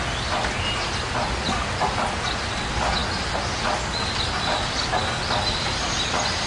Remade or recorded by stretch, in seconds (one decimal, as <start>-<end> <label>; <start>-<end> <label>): 0.0-6.5 recorded